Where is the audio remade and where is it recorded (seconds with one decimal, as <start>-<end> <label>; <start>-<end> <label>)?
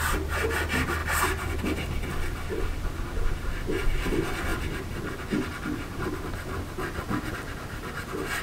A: 0.0-8.4 recorded